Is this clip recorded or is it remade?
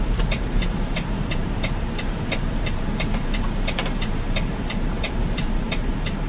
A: remade